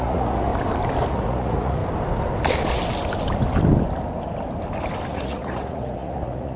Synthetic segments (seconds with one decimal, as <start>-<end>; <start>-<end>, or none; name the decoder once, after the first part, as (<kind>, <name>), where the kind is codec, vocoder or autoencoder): 0.0-0.5 (vocoder, Vocos); 1.1-1.8; 5.1-6.6